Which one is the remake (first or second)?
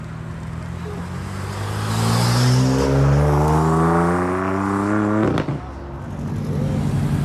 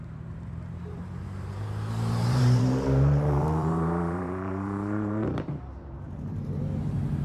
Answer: second